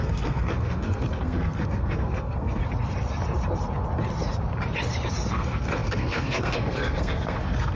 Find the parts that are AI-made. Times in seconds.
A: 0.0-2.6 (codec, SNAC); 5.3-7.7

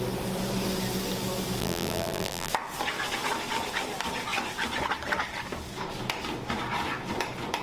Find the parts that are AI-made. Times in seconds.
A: 1.6-2.5 (vocoder, BigVGAN v2)